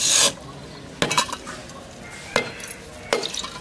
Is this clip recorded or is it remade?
recorded